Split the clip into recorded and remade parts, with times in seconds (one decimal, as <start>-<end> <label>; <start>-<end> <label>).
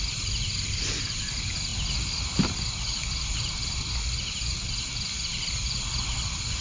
0.0-6.6 recorded